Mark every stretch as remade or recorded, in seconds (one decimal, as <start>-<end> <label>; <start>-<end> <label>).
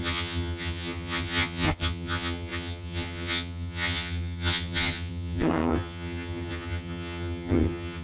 0.0-8.0 remade